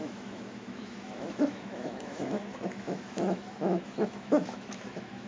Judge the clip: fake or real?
fake